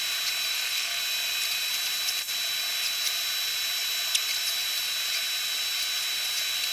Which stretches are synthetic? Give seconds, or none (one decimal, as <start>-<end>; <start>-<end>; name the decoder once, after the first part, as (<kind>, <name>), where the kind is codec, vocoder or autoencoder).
0.5-1.0 (codec, SNAC)